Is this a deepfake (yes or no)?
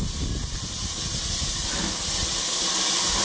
no